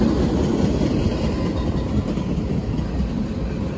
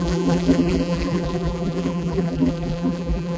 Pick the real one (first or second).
first